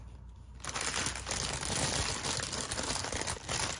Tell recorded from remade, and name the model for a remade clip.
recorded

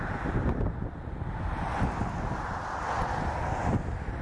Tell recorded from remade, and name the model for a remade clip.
recorded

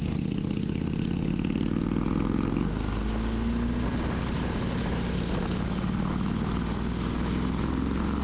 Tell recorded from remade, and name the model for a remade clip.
recorded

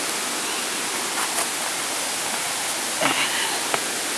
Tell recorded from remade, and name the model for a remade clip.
recorded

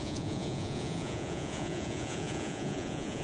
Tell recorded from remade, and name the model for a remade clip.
remade, vocoder, Vocos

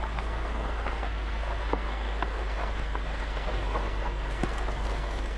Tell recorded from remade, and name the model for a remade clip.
remade, codec, SNAC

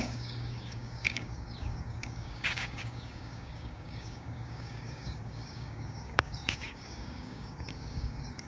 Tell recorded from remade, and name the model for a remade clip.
remade, codec, DAC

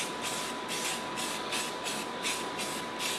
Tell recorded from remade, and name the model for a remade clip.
recorded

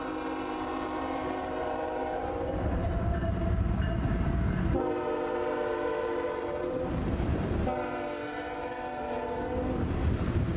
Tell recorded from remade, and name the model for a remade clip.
remade, vocoder, BigVGAN v2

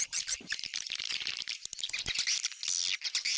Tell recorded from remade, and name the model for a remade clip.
recorded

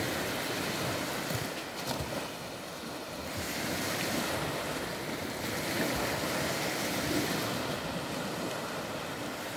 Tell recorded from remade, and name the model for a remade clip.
recorded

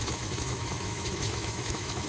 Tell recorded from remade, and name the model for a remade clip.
remade, autoencoder, DAC-VAE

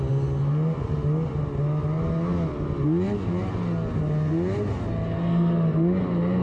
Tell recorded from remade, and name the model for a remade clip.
recorded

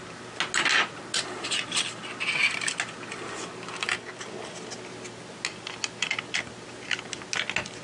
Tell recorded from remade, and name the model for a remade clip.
recorded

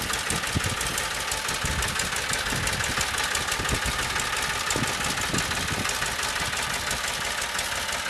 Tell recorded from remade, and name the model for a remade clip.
recorded